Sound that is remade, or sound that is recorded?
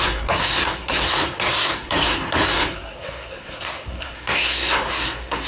remade